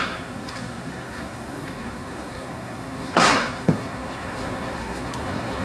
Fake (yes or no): yes